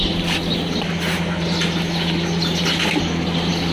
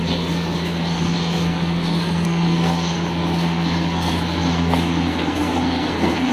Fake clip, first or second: second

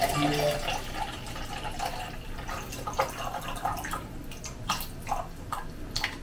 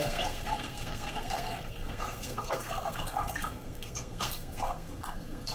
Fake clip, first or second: second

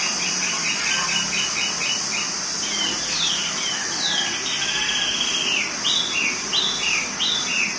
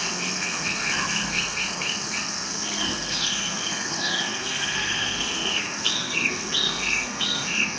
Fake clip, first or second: second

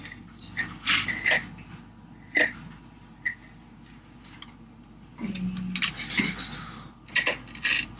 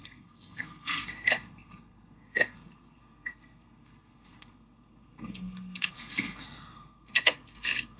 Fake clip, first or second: second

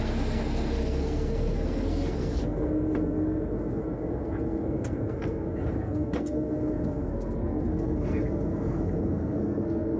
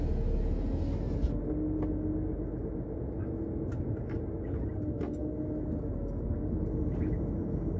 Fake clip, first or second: first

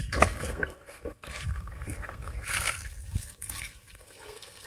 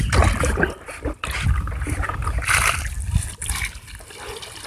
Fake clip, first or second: first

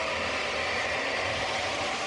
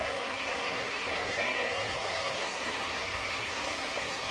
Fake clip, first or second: second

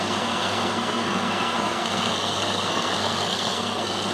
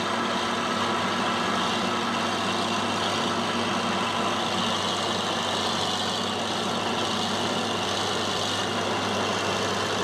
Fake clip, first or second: first